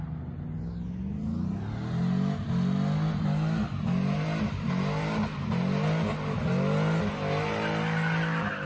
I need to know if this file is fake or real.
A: real